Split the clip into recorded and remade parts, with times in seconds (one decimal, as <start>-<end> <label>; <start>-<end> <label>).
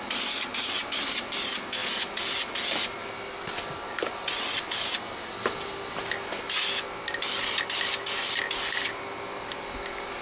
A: 0.0-0.5 recorded; 0.5-1.3 remade; 1.3-10.2 recorded